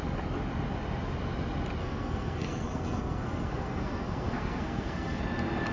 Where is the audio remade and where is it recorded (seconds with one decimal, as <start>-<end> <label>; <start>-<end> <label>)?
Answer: 0.0-1.8 recorded; 1.8-5.2 remade; 5.2-5.7 recorded